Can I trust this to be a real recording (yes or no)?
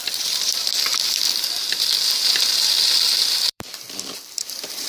no